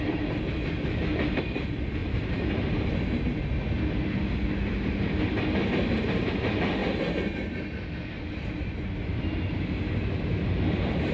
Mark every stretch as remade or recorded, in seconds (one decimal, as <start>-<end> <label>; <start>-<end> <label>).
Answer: 0.0-2.0 recorded; 2.0-2.6 remade; 2.6-11.1 recorded